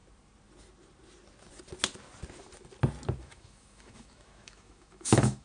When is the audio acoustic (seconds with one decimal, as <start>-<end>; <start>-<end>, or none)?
0.0-3.2